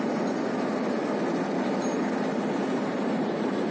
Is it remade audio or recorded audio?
recorded